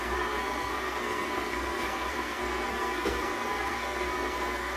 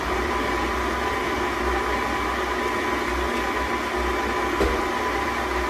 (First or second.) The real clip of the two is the second